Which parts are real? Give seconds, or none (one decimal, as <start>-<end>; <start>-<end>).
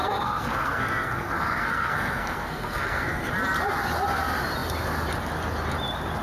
3.3-6.2